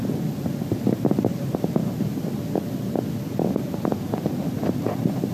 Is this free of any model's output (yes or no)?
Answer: no